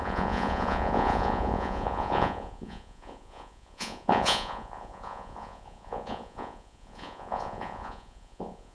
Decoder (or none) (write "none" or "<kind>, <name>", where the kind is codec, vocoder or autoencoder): vocoder, Vocos